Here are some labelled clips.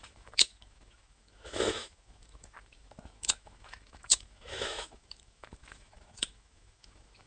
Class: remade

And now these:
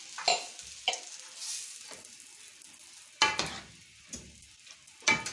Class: recorded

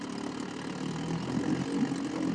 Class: recorded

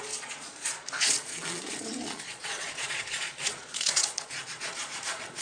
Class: remade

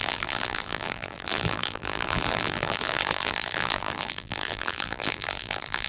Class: remade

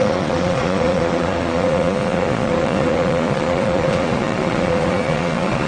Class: remade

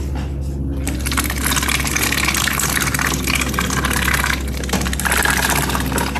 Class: recorded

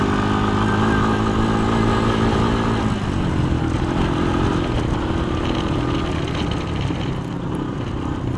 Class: recorded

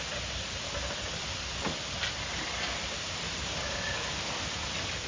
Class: recorded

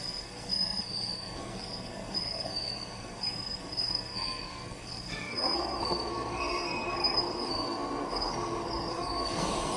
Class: remade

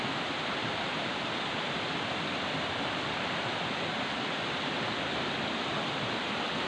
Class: remade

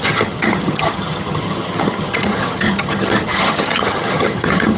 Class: remade